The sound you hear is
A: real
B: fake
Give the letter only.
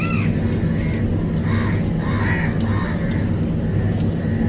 A